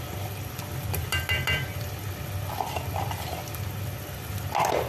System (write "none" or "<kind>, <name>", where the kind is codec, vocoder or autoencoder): none